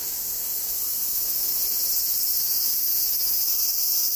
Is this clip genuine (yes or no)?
no